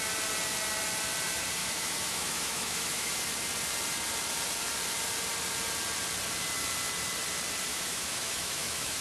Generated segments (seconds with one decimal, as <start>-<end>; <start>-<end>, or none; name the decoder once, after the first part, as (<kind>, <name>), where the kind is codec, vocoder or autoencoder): 1.6-3.1 (autoencoder, DAC-VAE); 7.7-9.0